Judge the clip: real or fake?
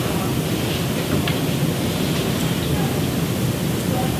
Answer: real